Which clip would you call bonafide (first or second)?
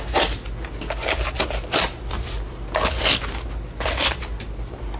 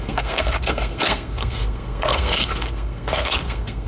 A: first